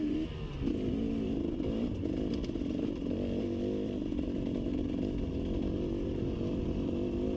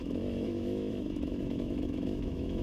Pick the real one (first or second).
first